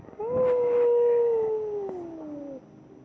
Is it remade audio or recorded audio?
recorded